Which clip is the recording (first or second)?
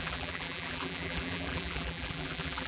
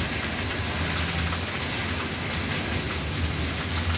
second